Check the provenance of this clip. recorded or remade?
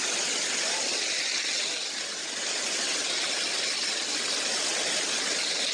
recorded